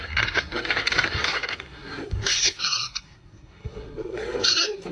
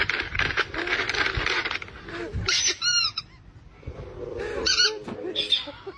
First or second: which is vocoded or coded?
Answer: first